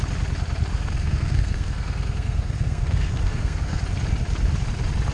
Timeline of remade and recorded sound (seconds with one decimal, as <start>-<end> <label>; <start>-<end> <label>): 0.0-0.7 recorded; 0.7-3.8 remade; 3.8-5.1 recorded